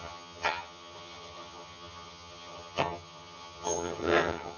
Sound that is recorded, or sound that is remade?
remade